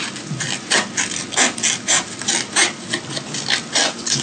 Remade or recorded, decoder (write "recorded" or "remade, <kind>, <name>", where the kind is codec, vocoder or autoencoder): recorded